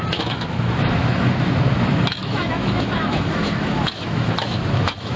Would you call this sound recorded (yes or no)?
no